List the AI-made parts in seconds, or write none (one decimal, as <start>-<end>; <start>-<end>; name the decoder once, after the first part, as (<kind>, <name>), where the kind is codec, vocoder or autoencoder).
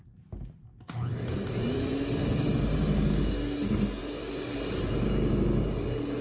1.1-1.9 (vocoder, BigVGAN v2); 4.0-4.7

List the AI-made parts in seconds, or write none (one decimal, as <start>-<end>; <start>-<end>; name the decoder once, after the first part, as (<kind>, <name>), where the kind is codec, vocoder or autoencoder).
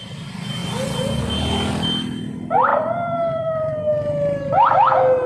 2.7-3.7 (vocoder, BigVGAN v2)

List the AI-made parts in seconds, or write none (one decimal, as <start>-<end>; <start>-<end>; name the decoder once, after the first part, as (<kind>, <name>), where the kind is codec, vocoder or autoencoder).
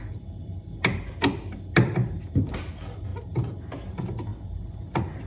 2.0-2.7 (vocoder, BigVGAN v2); 3.1-3.6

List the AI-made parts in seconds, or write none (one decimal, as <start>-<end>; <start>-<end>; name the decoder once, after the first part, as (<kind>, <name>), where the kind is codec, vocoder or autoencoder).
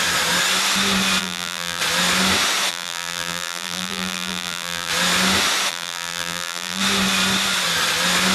1.2-1.8 (vocoder, BigVGAN v2); 2.7-4.9; 5.7-6.8